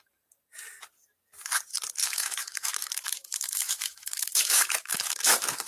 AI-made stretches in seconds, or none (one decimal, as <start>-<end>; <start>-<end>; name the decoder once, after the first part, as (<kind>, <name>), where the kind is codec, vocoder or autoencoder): 2.0-5.7 (autoencoder, DAC-VAE)